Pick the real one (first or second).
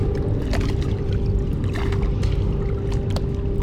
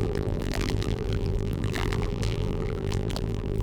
first